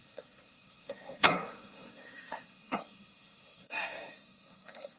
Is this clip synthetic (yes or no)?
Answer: yes